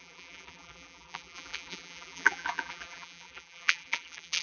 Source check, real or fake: fake